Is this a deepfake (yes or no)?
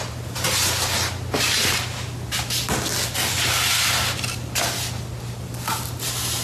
no